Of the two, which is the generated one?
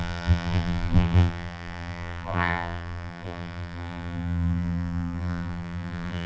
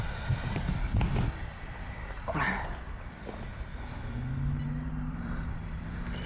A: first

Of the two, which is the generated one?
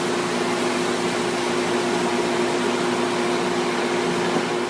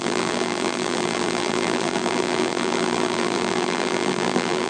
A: second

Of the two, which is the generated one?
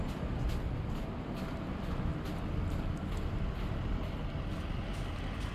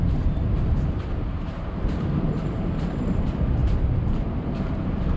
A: second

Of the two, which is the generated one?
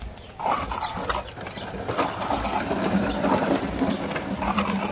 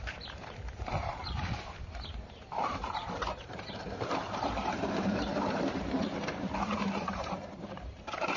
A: second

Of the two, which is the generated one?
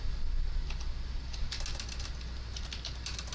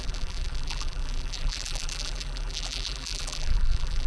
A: second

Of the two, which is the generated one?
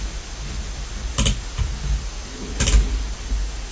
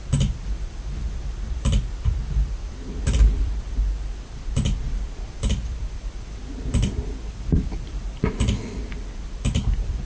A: second